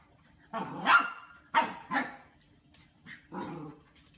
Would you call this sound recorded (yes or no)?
yes